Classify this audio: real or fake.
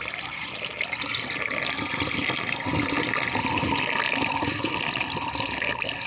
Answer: real